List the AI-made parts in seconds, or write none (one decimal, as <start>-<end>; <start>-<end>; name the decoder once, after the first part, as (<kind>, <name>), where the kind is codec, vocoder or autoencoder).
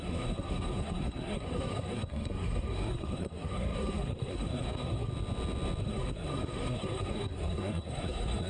0.0-5.1 (codec, SNAC); 5.8-8.5